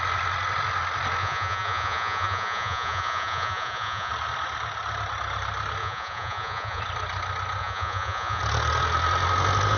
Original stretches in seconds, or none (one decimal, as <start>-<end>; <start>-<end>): 0.0-1.2; 4.1-5.8; 6.8-7.6; 8.4-9.8

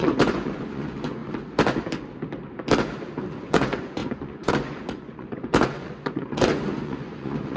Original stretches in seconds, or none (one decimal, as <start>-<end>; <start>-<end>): 1.2-3.4

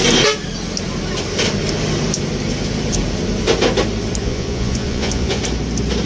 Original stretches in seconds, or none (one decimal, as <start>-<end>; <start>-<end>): 0.0-4.2; 5.4-6.1